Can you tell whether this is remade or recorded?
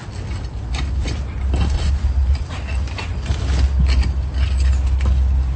recorded